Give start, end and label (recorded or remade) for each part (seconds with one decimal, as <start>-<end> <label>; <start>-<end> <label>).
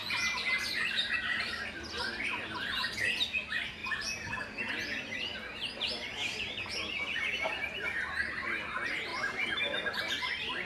0.0-9.1 recorded; 9.1-9.6 remade; 9.6-10.7 recorded